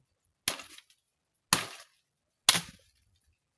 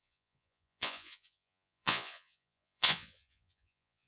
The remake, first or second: second